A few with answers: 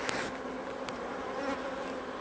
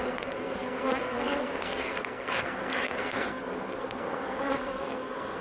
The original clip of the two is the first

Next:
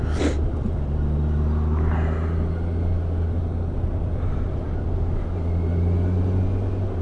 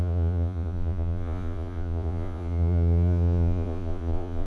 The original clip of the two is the first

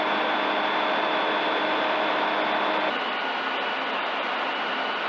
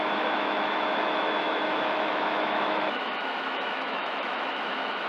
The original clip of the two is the first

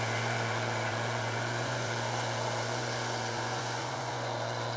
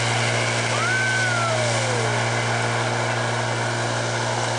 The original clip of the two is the second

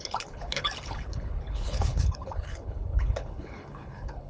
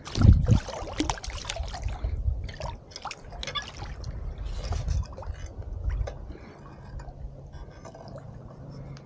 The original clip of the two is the second